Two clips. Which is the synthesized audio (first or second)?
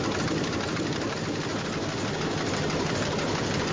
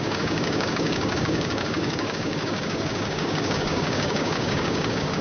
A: second